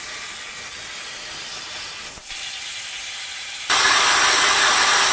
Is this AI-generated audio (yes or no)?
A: no